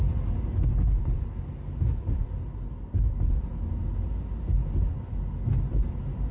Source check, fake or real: real